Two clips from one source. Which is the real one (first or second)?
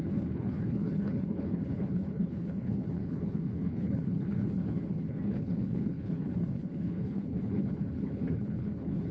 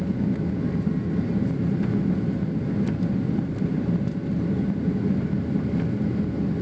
second